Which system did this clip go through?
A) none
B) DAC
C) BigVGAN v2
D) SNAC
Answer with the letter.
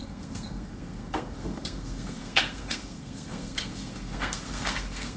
D